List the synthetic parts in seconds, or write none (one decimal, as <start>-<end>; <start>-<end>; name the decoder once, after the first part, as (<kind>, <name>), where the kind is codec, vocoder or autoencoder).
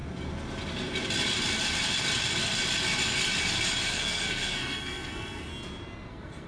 3.9-5.5 (codec, SNAC); 6.1-6.5